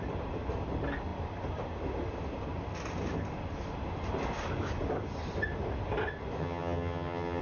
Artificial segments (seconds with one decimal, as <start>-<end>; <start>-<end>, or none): 6.4-7.4